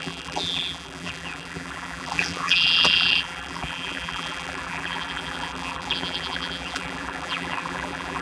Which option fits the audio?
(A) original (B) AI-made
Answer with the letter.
B